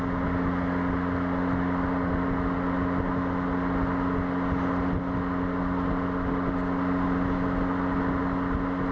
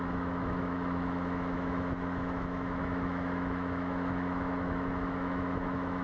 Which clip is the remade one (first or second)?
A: second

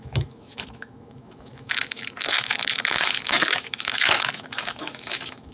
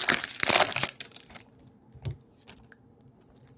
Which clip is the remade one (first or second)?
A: first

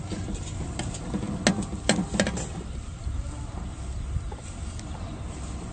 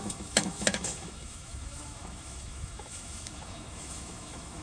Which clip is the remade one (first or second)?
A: second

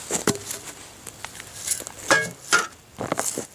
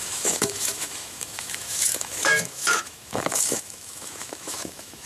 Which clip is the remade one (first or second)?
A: second